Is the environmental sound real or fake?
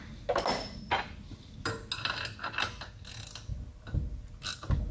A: real